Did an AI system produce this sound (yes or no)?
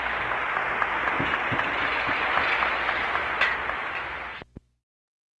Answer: no